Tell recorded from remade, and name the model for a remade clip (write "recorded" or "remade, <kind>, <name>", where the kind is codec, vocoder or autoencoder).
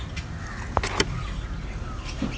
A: recorded